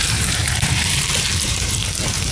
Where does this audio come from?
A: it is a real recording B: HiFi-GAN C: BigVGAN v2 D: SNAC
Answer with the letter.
C